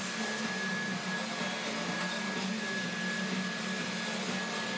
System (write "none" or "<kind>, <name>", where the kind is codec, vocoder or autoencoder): none